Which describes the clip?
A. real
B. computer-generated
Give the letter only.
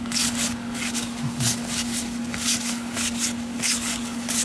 B